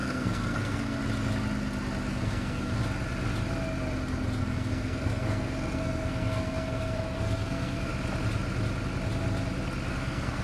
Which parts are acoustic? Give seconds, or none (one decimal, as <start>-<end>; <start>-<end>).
1.0-2.1; 2.8-4.4; 7.9-9.9